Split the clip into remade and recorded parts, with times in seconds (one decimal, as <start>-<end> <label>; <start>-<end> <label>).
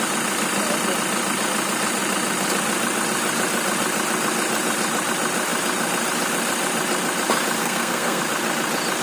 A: 0.0-7.6 recorded; 7.6-8.2 remade; 8.2-9.0 recorded